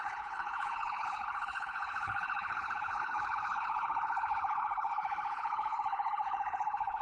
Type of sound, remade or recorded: remade